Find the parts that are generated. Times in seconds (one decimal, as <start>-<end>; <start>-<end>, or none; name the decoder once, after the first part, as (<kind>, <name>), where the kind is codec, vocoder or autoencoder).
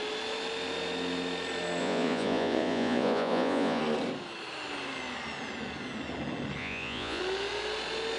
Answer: 1.8-3.8 (vocoder, Vocos); 6.6-7.2